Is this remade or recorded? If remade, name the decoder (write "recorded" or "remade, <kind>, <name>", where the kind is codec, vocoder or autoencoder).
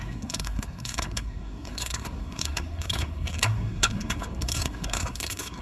remade, codec, SNAC